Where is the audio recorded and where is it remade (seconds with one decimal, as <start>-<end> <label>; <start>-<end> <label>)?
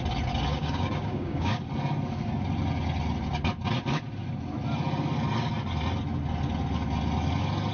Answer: 0.0-0.5 recorded; 0.5-1.6 remade; 1.6-7.7 recorded